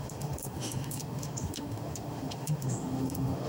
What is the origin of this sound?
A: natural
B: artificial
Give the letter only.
B